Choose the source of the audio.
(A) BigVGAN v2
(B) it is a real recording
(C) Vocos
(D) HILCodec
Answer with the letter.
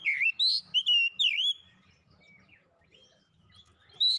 B